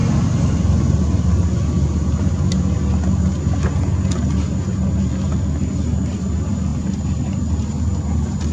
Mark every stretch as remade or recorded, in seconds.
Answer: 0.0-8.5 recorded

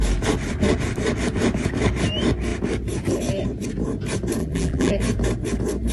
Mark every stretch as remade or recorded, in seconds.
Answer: 0.0-4.4 recorded; 4.4-4.9 remade; 4.9-5.9 recorded